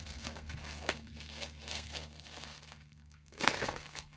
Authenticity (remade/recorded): remade